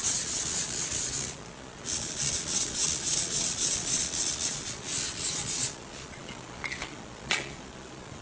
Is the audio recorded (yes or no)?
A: no